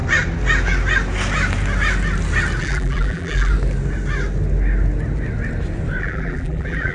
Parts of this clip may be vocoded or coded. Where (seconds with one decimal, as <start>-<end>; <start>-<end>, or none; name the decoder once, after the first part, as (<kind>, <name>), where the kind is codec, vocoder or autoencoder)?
2.6-3.5 (vocoder, BigVGAN v2); 6.0-6.9